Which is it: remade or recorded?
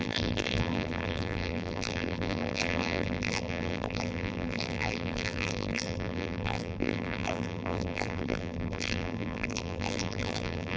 remade